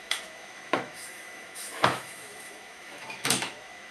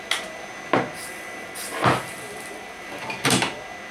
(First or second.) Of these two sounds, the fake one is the first